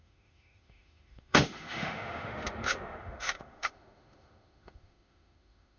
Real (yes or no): no